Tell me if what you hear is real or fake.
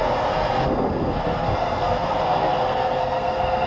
fake